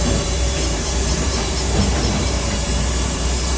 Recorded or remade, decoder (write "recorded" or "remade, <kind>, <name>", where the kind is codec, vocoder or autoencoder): remade, vocoder, BigVGAN v2